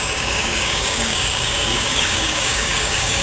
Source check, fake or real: fake